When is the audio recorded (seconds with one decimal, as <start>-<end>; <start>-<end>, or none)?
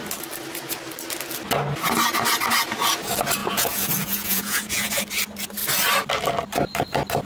0.0-3.4; 4.9-7.3